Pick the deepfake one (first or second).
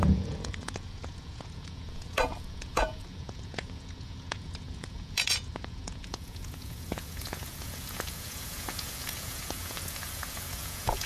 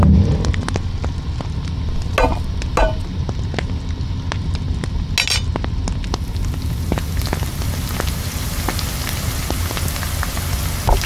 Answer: first